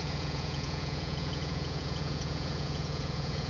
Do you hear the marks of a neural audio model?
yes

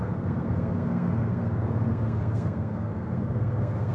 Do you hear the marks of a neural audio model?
yes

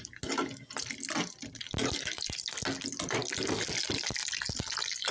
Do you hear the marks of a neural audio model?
no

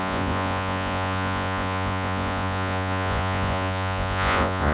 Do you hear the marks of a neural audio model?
yes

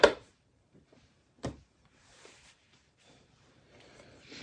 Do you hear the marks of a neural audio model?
yes